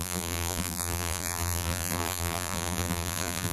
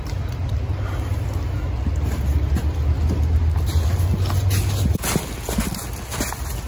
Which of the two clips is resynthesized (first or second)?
first